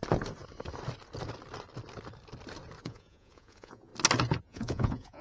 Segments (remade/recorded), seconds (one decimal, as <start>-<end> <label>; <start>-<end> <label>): 0.0-2.8 recorded; 2.8-3.9 remade; 3.9-4.4 recorded; 4.4-5.2 remade